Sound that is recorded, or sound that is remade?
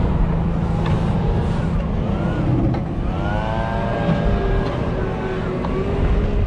recorded